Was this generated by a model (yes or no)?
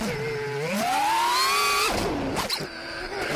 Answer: no